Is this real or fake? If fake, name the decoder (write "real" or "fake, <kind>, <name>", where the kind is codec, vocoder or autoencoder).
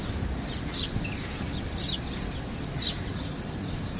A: real